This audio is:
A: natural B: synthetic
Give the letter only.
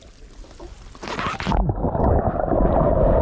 A